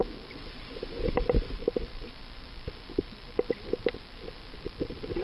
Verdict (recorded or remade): recorded